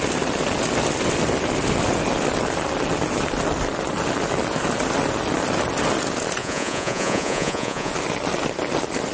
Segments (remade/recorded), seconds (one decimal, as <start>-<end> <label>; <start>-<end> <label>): 0.0-6.4 recorded; 6.4-7.9 remade; 7.9-9.1 recorded